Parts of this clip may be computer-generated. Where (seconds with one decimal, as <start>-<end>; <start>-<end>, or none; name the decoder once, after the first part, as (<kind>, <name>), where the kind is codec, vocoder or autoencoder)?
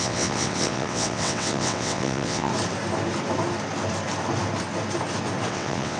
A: 0.0-2.5 (vocoder, WaveNeXt); 5.5-6.0